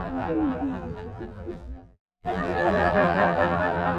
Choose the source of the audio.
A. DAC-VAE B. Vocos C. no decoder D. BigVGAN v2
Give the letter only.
D